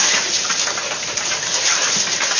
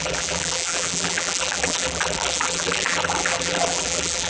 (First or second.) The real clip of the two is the first